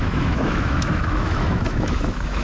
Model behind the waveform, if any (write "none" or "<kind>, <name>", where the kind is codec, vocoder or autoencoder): autoencoder, DAC-VAE